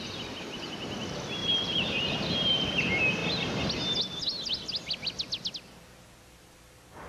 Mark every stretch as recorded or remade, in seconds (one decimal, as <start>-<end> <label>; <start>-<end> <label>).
0.0-1.4 recorded; 1.4-2.6 remade; 2.6-7.1 recorded